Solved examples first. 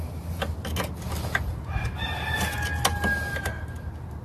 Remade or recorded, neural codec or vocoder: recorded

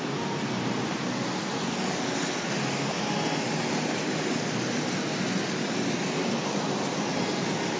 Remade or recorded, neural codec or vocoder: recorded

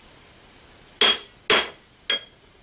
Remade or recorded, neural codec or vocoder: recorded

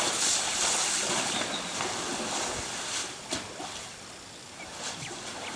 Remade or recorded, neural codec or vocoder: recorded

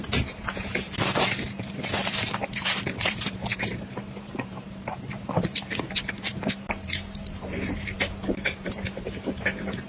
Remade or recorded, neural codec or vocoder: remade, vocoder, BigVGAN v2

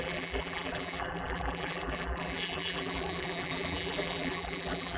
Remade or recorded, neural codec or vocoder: remade, vocoder, BigVGAN v2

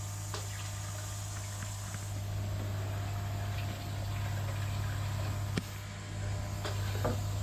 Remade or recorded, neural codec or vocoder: recorded